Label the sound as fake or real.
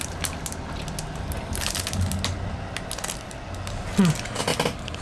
real